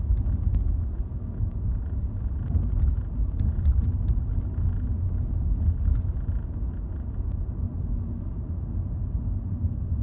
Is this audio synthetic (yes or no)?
no